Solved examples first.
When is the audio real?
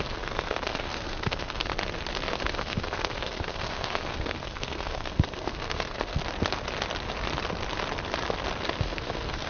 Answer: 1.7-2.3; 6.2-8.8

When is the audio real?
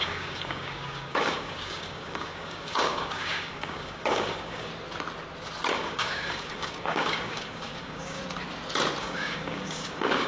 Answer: 4.7-5.7; 8.2-9.0